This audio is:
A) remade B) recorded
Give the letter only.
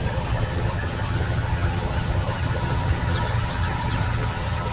A